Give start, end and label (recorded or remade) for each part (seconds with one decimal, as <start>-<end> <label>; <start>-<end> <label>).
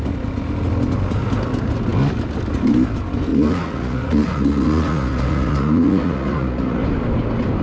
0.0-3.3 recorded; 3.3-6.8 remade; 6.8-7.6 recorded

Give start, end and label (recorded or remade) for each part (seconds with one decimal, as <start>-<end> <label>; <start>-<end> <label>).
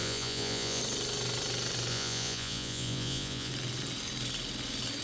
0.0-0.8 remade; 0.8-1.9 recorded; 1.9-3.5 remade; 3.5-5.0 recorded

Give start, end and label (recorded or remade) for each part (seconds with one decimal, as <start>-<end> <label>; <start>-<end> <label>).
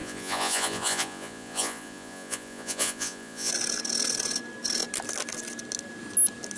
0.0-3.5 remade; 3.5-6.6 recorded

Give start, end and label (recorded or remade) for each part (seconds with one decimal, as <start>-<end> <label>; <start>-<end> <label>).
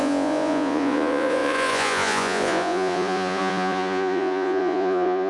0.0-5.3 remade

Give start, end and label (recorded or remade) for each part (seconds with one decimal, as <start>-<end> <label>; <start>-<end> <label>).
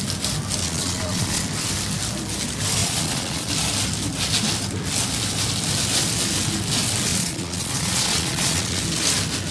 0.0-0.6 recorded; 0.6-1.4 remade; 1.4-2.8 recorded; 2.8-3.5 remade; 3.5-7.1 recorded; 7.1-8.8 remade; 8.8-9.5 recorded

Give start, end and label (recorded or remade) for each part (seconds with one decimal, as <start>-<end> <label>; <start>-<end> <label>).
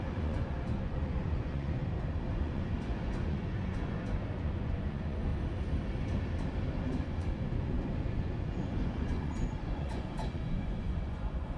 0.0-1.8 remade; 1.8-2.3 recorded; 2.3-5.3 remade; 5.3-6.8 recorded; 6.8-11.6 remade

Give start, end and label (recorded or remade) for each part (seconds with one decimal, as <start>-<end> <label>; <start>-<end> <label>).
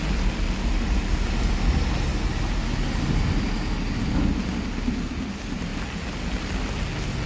0.0-7.3 recorded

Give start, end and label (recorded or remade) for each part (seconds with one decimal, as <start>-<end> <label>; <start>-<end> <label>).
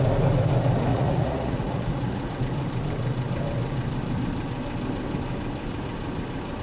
0.0-0.9 recorded; 0.9-2.4 remade; 2.4-6.6 recorded